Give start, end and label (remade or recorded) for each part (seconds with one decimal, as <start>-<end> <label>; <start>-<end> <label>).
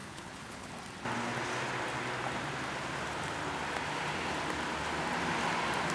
0.0-0.7 remade; 0.7-5.9 recorded